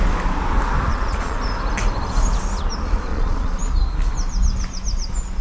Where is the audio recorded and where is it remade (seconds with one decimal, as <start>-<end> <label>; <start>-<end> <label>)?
0.0-0.9 recorded; 0.9-1.4 remade; 1.4-3.1 recorded; 3.1-3.6 remade; 3.6-5.4 recorded